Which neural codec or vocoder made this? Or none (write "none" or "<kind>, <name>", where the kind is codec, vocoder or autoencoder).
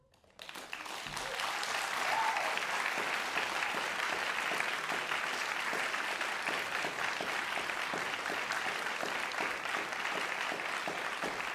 none